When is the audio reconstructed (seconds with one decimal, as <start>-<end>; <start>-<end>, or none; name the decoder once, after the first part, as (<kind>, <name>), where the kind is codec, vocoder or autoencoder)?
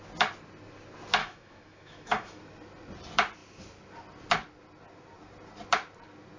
1.2-2.4 (autoencoder, DAC-VAE)